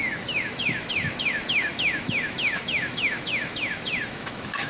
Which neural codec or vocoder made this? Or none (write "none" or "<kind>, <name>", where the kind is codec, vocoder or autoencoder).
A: autoencoder, DAC-VAE